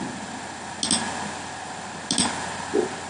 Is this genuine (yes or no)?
yes